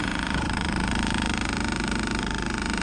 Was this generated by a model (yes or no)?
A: yes